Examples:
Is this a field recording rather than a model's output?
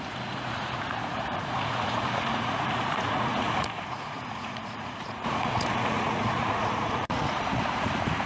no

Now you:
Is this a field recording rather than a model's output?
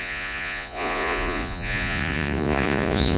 no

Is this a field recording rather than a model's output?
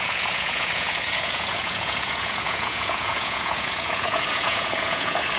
no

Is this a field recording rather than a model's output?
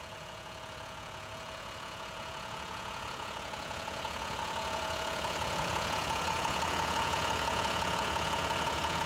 no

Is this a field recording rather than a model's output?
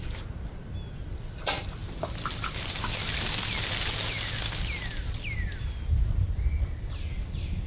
yes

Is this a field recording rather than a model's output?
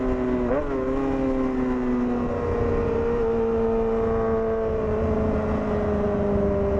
yes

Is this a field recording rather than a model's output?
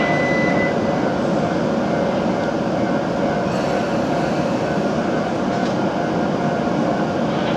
yes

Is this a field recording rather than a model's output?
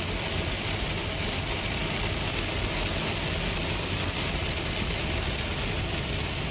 yes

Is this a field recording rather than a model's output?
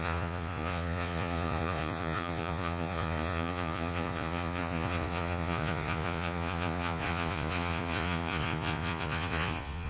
no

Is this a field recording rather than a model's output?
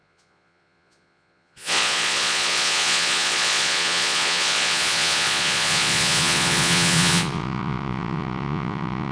no